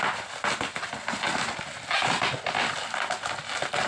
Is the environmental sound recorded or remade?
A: recorded